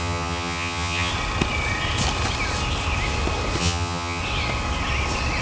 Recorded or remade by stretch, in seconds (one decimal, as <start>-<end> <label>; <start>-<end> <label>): 0.0-1.1 remade; 1.1-3.6 recorded; 3.6-4.2 remade; 4.2-5.4 recorded